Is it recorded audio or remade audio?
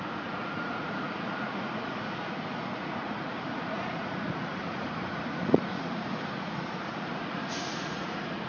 remade